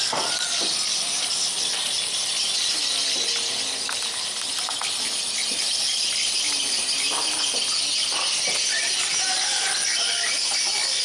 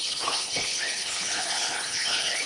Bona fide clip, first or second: first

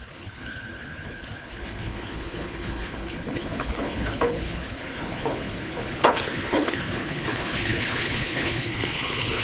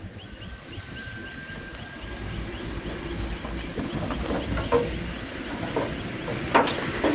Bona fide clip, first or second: second